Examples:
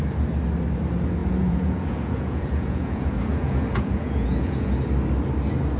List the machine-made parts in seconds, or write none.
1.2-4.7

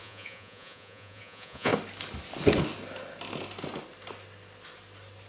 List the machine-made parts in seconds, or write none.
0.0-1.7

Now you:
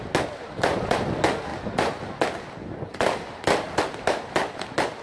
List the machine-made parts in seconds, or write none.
none

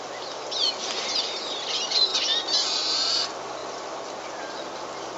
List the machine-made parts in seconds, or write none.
none

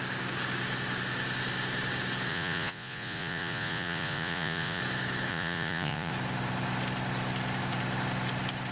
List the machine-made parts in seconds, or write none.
2.3-4.8; 5.3-6.1

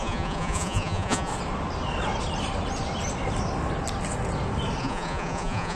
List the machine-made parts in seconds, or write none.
0.0-1.3; 4.8-5.8